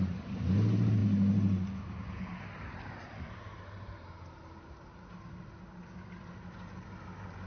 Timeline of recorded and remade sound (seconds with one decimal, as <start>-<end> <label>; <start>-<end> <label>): 0.0-1.0 remade; 1.0-3.1 recorded; 3.1-7.5 remade